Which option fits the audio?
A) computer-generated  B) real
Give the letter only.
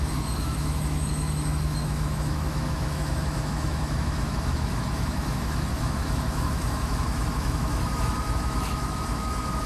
A